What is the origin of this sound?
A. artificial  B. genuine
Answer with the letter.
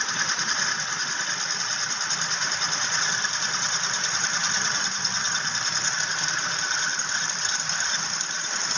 A